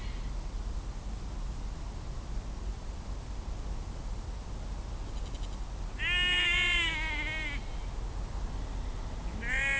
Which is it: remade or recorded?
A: recorded